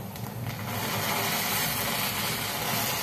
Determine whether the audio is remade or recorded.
recorded